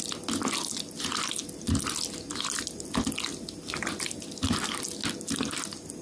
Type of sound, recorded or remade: recorded